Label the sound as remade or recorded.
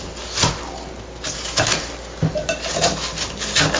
recorded